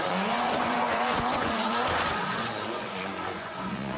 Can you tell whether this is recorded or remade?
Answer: remade